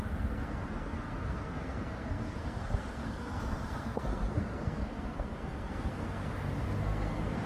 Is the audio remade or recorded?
remade